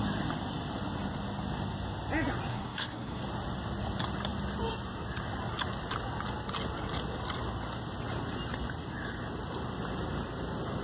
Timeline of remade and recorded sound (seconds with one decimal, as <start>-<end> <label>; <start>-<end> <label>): 0.0-2.5 recorded; 2.5-3.2 remade; 3.2-10.8 recorded